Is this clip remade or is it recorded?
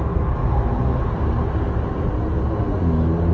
recorded